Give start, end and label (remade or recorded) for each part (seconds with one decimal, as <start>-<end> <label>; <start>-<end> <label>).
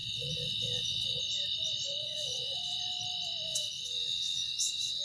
0.0-1.2 remade; 1.2-2.0 recorded; 2.0-2.8 remade; 2.8-3.5 recorded; 3.5-5.0 remade